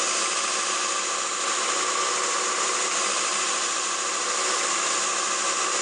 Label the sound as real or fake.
real